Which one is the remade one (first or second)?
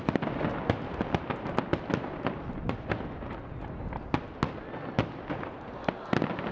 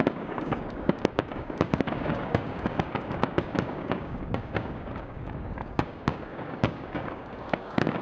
second